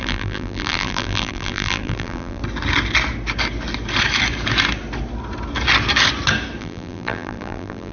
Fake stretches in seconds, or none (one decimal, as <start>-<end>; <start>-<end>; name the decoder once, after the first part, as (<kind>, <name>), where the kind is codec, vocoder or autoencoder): 0.0-2.4 (vocoder, BigVGAN v2); 6.6-7.9